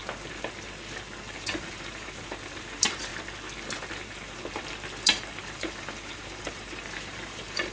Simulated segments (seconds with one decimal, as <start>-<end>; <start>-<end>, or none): 1.3-3.1; 5.0-7.7